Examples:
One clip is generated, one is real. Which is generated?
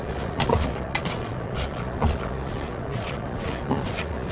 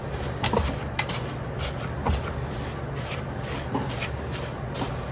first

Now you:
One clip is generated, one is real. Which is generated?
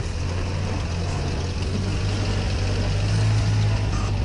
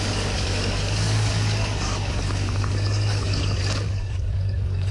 second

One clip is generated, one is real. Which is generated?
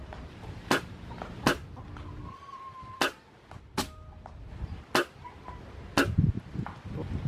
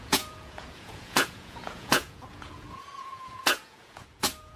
second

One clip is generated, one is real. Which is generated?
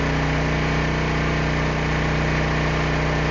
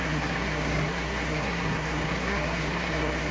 second